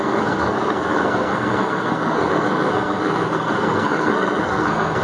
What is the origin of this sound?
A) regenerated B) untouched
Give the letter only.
A